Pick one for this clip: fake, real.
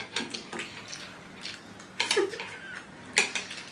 real